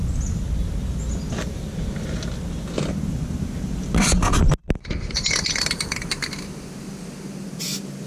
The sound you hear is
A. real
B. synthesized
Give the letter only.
A